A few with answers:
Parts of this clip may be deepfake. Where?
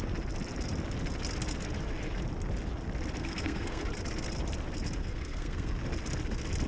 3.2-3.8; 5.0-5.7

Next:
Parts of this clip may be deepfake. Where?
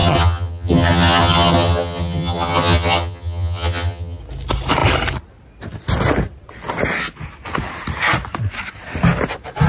0.0-4.2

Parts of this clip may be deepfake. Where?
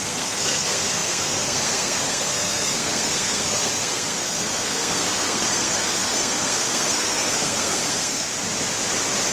0.0-8.3